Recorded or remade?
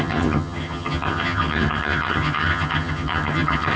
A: remade